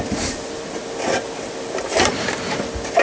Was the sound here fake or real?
fake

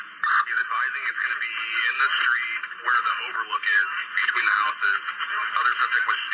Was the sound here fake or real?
real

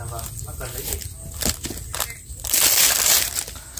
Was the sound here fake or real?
real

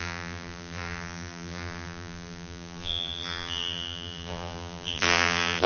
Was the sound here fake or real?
fake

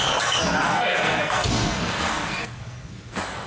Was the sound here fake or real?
fake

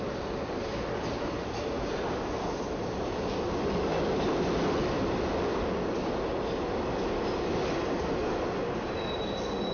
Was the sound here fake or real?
real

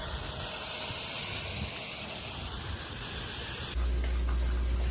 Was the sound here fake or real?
real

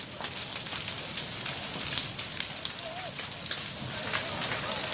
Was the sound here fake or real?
real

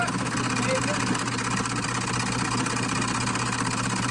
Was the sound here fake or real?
real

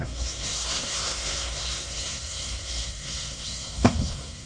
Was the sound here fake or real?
fake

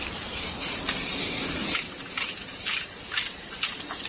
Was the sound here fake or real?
fake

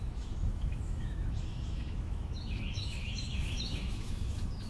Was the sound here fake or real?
fake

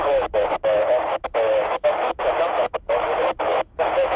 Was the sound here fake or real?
fake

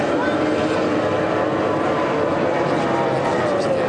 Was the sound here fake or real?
real